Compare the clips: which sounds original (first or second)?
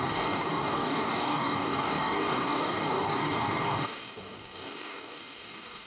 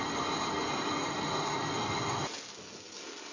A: second